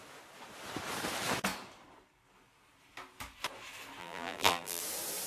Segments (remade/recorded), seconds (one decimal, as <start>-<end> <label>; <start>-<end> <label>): 0.0-4.0 recorded; 4.0-4.8 remade; 4.8-5.3 recorded